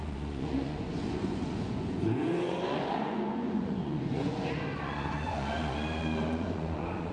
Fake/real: fake